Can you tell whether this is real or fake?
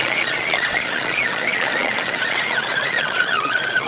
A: fake